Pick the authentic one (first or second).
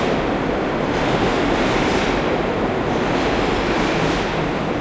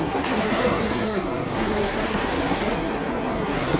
first